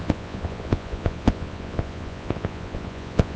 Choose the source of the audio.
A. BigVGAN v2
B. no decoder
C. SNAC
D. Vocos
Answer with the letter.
D